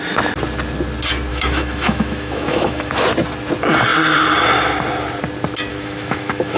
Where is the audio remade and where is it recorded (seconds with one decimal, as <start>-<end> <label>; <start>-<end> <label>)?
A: 0.0-1.3 recorded; 1.3-2.9 remade; 2.9-5.7 recorded; 5.7-6.6 remade